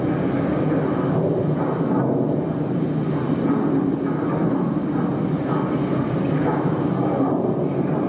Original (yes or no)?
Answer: yes